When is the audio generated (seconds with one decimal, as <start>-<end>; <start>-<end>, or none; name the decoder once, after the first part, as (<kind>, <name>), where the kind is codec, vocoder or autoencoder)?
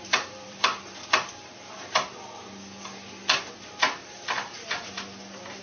0.0-0.7 (vocoder, BigVGAN v2); 4.1-5.6